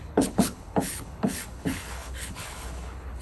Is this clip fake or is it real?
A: fake